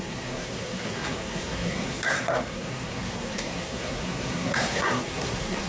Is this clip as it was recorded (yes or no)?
no